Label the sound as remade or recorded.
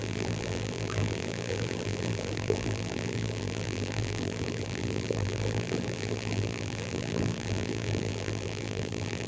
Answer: remade